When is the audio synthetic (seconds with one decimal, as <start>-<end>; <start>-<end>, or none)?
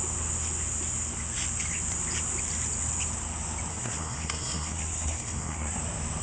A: 3.7-5.8